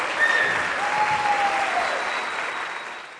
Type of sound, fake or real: real